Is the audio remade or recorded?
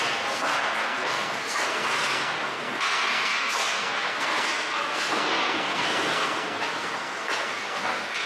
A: remade